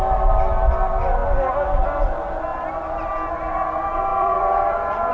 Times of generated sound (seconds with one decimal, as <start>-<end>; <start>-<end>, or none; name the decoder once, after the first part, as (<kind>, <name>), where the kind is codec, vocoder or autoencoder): 2.5-3.1 (vocoder, BigVGAN v2); 4.1-5.1